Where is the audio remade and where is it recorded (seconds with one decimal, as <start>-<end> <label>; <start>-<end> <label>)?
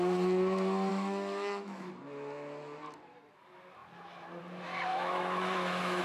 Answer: 0.0-0.9 recorded; 0.9-1.9 remade; 1.9-4.9 recorded; 4.9-6.0 remade